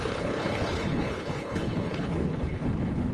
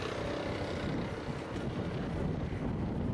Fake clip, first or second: first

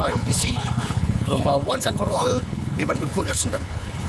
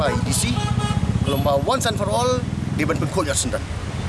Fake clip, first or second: first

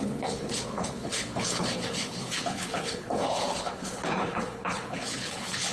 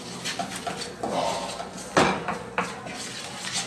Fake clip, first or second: first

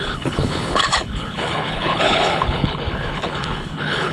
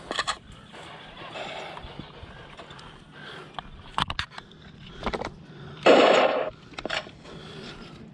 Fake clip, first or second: first